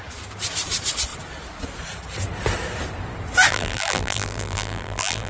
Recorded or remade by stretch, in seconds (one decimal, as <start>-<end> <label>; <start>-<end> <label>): 0.0-3.5 recorded; 3.5-5.3 remade